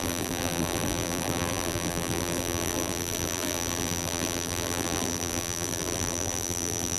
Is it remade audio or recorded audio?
remade